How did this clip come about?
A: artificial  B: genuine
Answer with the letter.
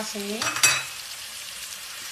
A